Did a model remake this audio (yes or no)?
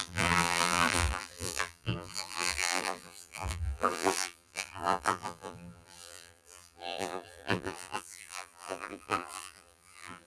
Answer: yes